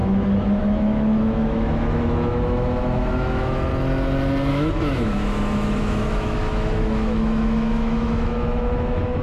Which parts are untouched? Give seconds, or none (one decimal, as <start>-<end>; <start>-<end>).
3.7-4.5